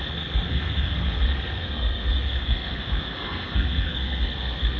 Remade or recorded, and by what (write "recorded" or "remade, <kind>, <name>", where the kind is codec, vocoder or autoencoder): remade, codec, SNAC